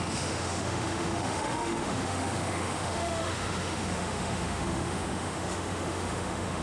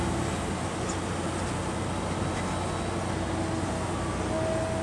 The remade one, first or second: first